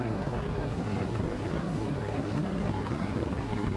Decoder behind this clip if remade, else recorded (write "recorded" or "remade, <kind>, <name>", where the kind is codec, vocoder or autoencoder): remade, codec, SNAC